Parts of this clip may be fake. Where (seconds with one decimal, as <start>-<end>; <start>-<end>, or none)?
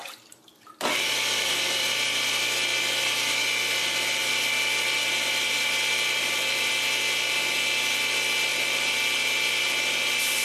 0.0-2.4; 4.2-6.7; 8.5-9.0